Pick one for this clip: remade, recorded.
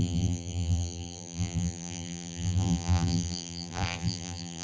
remade